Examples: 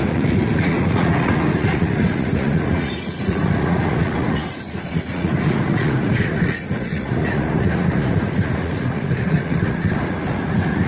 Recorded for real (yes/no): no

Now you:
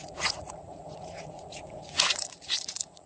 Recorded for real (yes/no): no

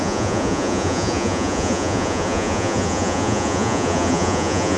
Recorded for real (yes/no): no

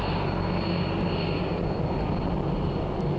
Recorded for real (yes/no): yes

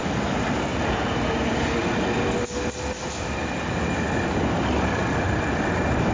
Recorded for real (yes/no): yes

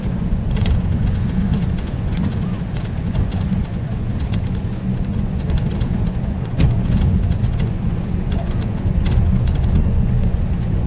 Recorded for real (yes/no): no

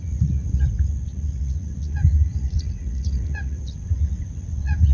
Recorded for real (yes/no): no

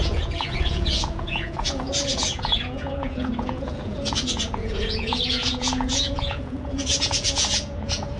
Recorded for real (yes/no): no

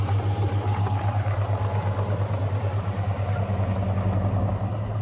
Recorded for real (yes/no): yes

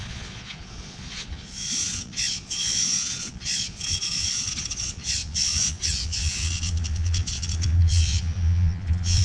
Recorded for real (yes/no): no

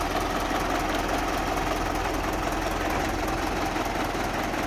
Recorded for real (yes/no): yes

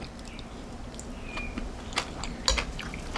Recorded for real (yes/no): yes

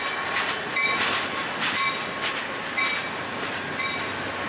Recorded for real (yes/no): yes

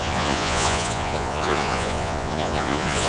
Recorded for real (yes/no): no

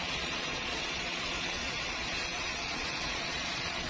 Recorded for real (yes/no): no